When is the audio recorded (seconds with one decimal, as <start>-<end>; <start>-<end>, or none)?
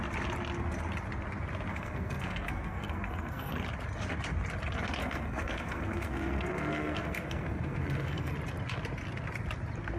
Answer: 0.0-1.7; 3.5-5.0; 8.3-10.0